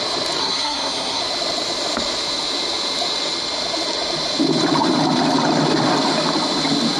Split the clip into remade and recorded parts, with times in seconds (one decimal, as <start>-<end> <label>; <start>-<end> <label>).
0.0-0.4 recorded; 0.4-1.2 remade; 1.2-7.0 recorded